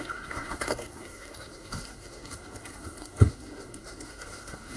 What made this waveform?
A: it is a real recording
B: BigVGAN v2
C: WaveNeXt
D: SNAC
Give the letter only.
D